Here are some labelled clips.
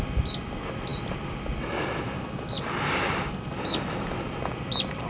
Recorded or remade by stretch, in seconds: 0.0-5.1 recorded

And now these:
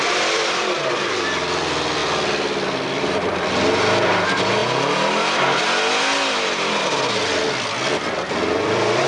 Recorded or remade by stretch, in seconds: 0.0-4.6 remade; 4.6-8.3 recorded; 8.3-9.1 remade

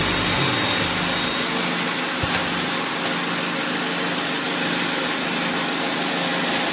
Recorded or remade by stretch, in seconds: 0.0-2.4 recorded; 2.4-6.7 remade

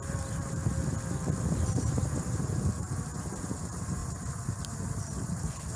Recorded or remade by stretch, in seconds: 0.0-0.6 remade; 0.6-1.7 recorded; 1.7-5.8 remade

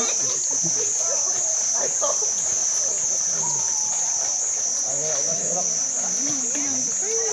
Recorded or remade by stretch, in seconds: 0.0-7.3 recorded